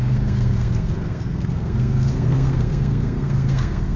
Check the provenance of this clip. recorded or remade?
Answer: remade